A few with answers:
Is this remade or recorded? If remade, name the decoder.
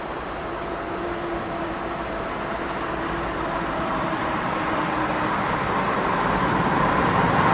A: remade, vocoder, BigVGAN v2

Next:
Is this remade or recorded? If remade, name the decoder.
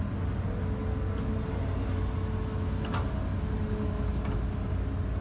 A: recorded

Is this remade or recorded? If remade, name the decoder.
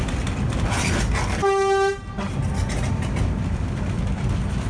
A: recorded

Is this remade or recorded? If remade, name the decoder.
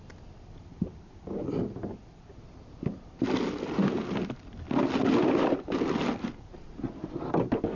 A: recorded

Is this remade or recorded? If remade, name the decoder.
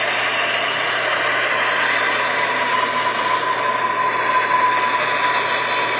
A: recorded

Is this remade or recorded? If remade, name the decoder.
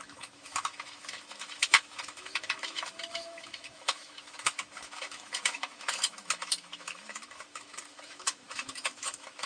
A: remade, autoencoder, DAC-VAE